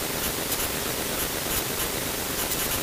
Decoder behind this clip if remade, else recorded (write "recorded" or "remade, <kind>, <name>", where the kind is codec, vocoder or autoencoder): recorded